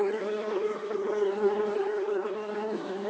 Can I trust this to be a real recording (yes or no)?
no